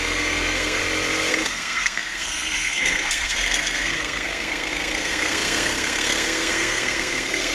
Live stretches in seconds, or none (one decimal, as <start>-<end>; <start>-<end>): 0.8-1.3